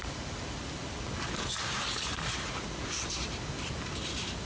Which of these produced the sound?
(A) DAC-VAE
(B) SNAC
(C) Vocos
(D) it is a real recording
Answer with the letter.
D